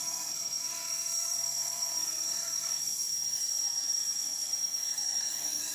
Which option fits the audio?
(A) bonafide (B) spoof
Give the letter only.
B